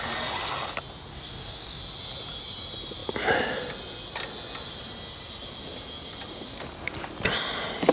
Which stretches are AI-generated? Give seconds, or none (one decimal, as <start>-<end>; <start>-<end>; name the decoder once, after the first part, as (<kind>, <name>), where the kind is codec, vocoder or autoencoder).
1.1-1.8 (codec, DAC)